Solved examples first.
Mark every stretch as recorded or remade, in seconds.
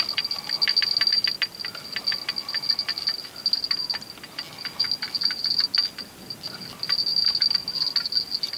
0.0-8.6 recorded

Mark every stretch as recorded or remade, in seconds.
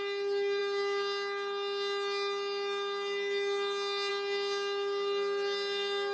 0.0-6.1 recorded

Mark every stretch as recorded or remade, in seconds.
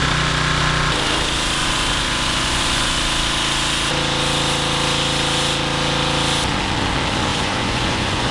0.0-1.6 recorded; 1.6-3.0 remade; 3.0-7.3 recorded; 7.3-8.3 remade